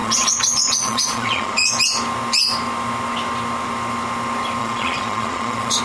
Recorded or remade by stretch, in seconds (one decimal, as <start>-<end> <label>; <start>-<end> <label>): 0.0-1.7 remade; 1.7-4.6 recorded; 4.6-5.8 remade

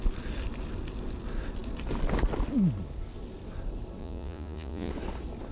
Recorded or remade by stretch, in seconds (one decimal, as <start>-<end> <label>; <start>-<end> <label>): 0.0-4.0 recorded; 4.0-4.9 remade; 4.9-5.5 recorded